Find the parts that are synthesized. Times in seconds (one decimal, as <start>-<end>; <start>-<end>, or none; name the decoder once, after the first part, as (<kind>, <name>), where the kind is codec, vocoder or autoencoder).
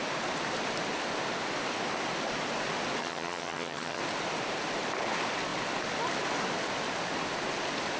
3.0-4.0 (vocoder, HiFi-GAN)